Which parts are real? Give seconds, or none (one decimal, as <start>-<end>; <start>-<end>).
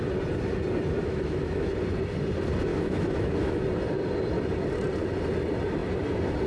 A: 0.0-1.0; 1.7-2.7; 3.6-6.5